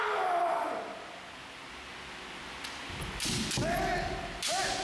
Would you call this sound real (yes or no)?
yes